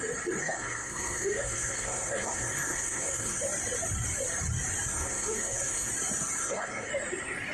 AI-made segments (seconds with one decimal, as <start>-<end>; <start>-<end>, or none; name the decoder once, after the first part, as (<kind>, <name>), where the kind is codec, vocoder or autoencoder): 0.4-3.4 (codec, SNAC); 4.9-5.9; 6.4-6.9